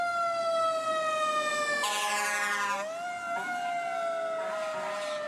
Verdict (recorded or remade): recorded